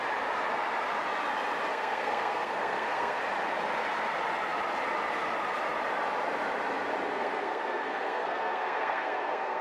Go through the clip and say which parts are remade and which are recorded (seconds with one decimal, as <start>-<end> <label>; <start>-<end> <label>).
0.0-1.7 recorded; 1.7-3.2 remade; 3.2-7.1 recorded; 7.1-9.6 remade